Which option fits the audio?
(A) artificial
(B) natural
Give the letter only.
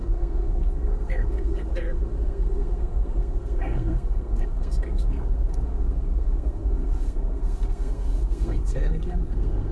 A